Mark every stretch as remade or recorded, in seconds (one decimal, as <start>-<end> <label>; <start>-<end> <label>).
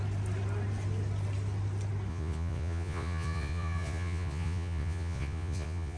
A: 0.0-2.1 recorded; 2.1-6.0 remade